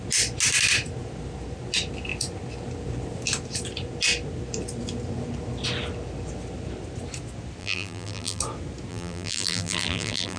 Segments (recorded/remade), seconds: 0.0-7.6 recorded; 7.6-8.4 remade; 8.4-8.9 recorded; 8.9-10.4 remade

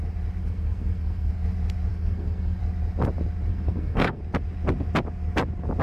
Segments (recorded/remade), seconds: 0.0-0.4 recorded; 0.4-1.3 remade; 1.3-1.9 recorded; 1.9-2.6 remade; 2.6-3.5 recorded; 3.5-4.2 remade; 4.2-5.8 recorded

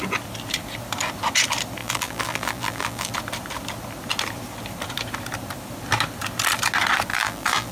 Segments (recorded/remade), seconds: 0.0-1.8 recorded; 1.8-3.1 remade; 3.1-7.1 recorded; 7.1-7.7 remade

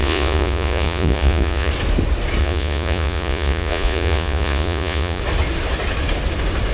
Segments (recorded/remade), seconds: 0.0-1.7 remade; 1.7-2.4 recorded; 2.4-5.2 remade; 5.2-6.7 recorded

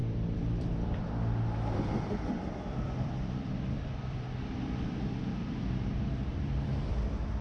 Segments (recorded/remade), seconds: 0.0-7.4 remade

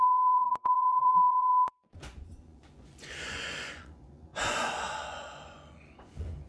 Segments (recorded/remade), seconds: 0.0-6.5 remade

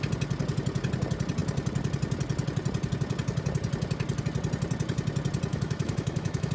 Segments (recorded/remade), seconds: 0.0-5.5 recorded; 5.5-6.5 remade

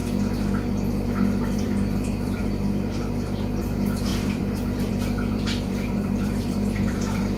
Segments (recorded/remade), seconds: 0.0-1.6 recorded; 1.6-2.4 remade; 2.4-3.6 recorded; 3.6-7.4 remade